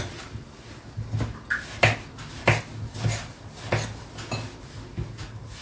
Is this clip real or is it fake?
real